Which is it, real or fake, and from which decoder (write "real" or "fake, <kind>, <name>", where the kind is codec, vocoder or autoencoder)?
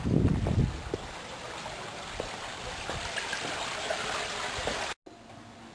real